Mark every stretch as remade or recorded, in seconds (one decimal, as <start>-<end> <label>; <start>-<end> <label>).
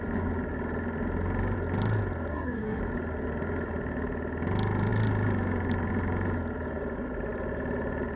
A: 0.0-2.3 recorded; 2.3-2.8 remade; 2.8-8.2 recorded